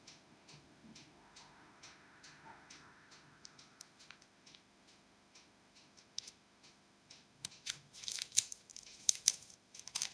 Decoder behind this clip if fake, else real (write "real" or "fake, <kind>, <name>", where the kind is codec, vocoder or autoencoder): fake, autoencoder, DAC-VAE